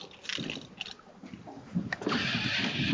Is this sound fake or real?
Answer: real